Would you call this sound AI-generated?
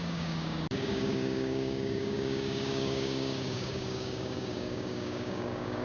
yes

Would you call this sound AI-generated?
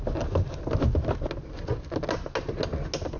no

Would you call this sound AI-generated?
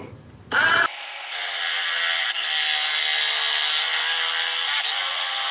no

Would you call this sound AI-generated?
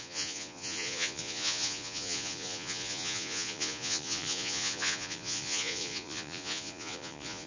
yes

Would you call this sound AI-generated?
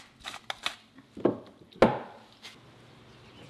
no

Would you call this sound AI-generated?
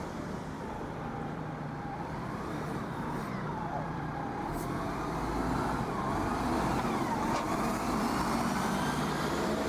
yes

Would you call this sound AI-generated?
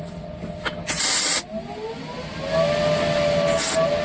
no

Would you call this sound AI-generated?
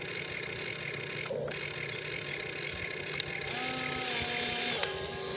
no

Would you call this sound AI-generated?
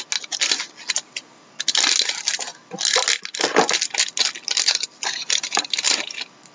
no